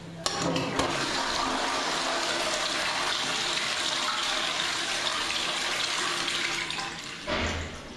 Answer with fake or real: real